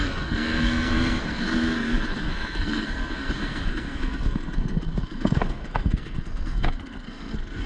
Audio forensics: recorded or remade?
remade